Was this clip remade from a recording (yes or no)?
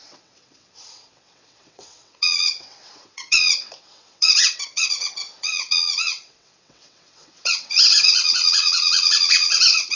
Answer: yes